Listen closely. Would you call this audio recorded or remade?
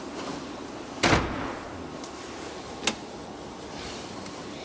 recorded